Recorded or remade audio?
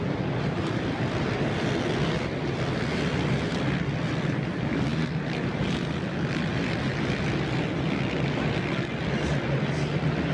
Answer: recorded